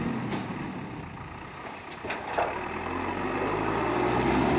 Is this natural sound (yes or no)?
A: yes